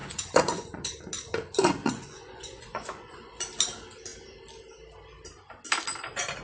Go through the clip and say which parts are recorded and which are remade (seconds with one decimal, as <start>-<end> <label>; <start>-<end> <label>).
0.0-0.9 remade; 0.9-1.8 recorded; 1.8-3.3 remade; 3.3-6.4 recorded